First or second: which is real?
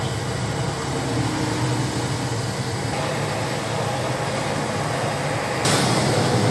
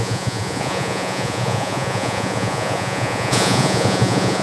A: first